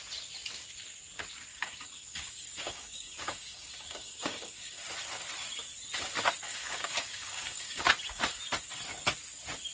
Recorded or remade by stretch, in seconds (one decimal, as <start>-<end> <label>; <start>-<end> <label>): 0.0-1.5 recorded; 1.5-4.9 remade; 4.9-6.5 recorded; 6.5-7.9 remade; 7.9-9.7 recorded